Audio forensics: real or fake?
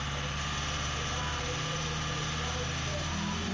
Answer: real